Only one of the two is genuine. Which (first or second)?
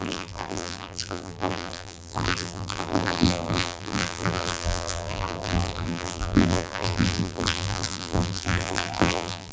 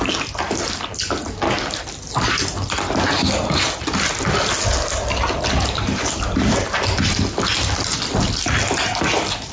second